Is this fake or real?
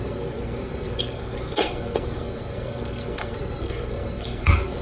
fake